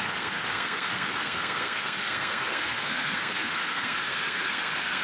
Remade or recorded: remade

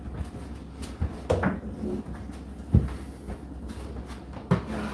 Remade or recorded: recorded